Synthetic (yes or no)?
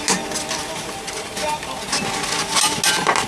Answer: no